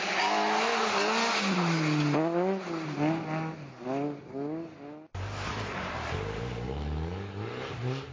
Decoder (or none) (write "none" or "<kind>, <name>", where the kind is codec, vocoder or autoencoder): none